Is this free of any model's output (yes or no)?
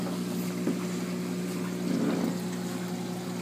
yes